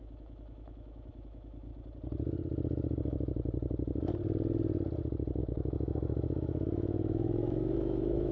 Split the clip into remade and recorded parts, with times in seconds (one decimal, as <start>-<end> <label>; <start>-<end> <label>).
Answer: 0.0-1.7 remade; 1.7-5.4 recorded; 5.4-8.3 remade